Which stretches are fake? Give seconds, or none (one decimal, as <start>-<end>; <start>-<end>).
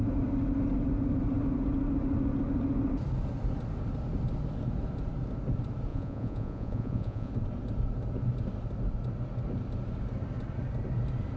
5.9-7.3